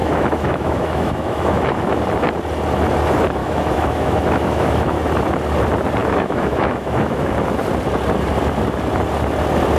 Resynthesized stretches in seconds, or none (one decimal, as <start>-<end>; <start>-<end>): 0.0-2.0; 3.4-5.0; 6.0-7.3